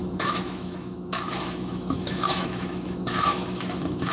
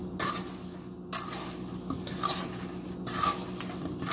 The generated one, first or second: first